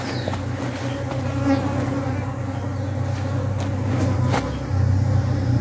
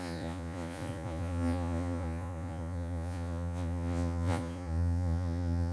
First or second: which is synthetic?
second